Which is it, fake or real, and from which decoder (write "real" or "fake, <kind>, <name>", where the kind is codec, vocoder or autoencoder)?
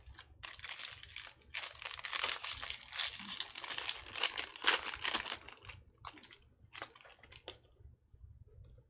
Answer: real